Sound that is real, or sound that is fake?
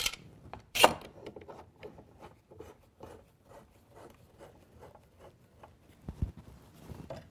fake